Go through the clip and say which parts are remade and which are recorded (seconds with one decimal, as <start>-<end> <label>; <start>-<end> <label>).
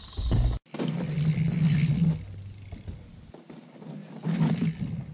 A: 0.0-5.1 recorded